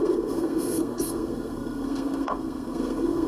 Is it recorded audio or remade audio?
remade